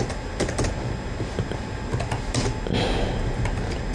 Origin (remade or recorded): recorded